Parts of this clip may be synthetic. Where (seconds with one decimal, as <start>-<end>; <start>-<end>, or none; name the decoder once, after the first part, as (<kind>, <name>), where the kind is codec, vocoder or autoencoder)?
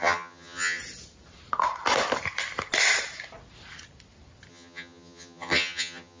0.0-0.8 (vocoder, HiFi-GAN); 4.5-6.2